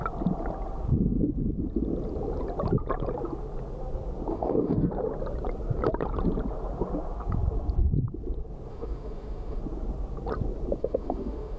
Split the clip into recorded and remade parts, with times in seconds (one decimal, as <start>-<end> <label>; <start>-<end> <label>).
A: 0.0-4.3 recorded; 4.3-4.9 remade; 4.9-8.7 recorded; 8.7-9.6 remade; 9.6-10.8 recorded; 10.8-11.6 remade